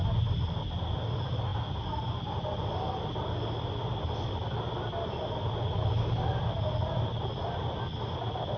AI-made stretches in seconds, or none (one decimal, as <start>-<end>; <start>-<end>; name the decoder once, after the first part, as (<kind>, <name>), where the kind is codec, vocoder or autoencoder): none